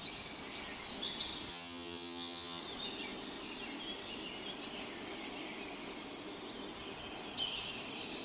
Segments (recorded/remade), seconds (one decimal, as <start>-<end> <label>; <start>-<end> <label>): 0.0-1.5 recorded; 1.5-2.6 remade; 2.6-8.2 recorded